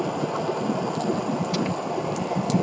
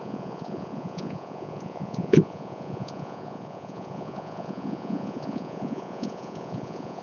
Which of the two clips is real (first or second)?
first